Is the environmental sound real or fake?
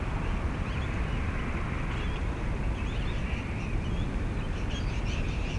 real